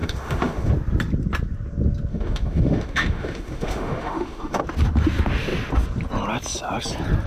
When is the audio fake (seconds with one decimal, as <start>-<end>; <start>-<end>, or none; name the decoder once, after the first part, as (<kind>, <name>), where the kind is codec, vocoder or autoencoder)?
0.0-0.7 (autoencoder, DAC-VAE); 2.1-4.6